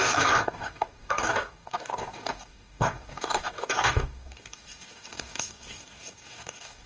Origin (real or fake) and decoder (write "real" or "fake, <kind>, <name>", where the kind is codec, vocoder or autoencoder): fake, codec, DAC